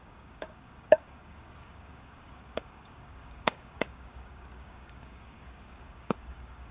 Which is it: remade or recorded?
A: remade